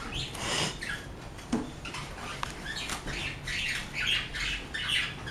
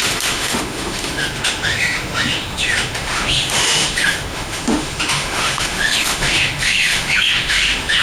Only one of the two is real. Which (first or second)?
first